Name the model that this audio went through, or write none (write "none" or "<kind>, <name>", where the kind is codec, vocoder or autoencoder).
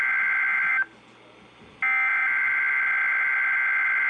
none